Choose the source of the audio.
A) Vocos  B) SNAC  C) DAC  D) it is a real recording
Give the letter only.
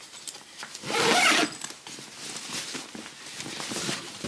D